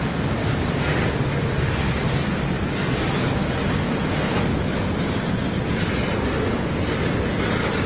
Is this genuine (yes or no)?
yes